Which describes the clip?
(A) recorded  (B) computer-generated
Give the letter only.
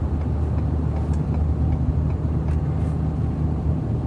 A